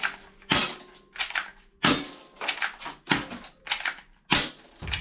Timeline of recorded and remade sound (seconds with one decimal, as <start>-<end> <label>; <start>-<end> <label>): 0.0-5.0 recorded